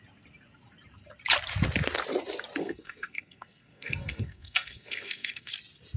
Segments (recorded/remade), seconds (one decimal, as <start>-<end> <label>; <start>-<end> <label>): 0.0-2.6 recorded; 2.6-5.5 remade; 5.5-6.0 recorded